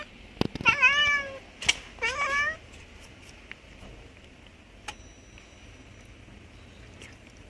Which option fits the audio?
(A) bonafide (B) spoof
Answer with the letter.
A